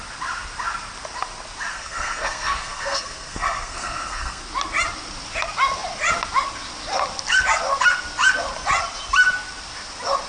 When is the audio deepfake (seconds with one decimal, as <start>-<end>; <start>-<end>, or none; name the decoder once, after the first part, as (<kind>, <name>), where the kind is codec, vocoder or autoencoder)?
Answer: 1.7-4.4 (codec, SNAC)